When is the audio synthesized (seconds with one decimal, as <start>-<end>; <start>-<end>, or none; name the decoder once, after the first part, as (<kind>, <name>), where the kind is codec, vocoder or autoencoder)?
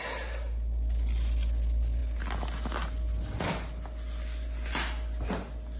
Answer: none